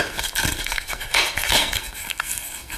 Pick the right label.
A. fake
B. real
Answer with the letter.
A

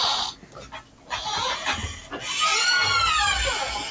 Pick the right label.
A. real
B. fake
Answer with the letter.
A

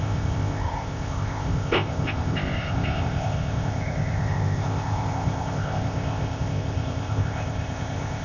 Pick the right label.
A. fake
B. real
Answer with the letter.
A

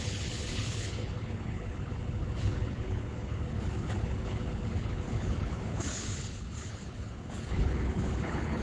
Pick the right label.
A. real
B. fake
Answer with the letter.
B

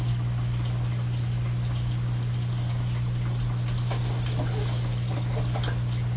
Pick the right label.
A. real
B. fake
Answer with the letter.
A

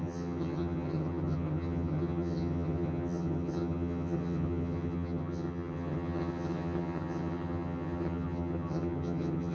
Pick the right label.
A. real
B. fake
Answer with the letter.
B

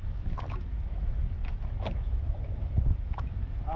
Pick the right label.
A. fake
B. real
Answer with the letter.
A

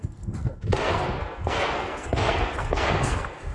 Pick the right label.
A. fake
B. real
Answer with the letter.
A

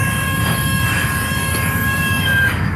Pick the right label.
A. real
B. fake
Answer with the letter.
B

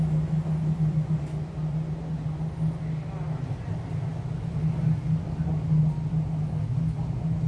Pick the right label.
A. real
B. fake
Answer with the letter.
A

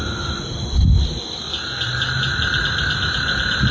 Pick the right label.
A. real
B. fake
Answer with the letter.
A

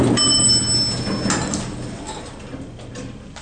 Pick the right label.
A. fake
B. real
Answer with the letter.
B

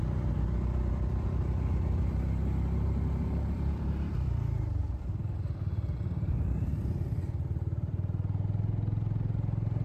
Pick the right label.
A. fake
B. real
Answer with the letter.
A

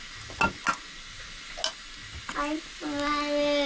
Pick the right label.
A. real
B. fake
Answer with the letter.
A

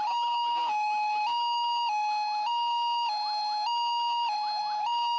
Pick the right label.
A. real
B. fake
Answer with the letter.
A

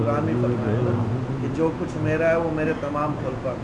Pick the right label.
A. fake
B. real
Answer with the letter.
B